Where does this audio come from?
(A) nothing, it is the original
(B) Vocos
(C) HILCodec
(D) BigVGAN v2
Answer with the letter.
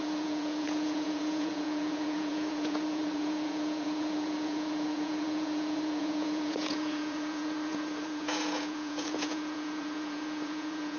B